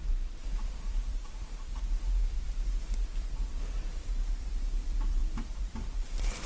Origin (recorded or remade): remade